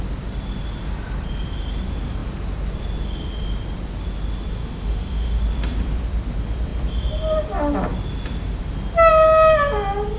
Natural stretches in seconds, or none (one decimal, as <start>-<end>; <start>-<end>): 0.0-4.6; 5.4-10.2